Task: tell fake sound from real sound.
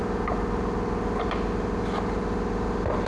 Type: real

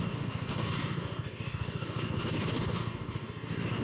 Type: fake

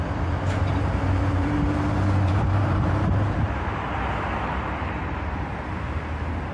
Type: fake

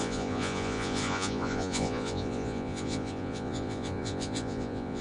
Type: fake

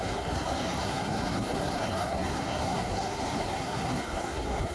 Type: fake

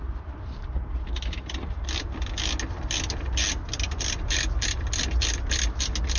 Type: real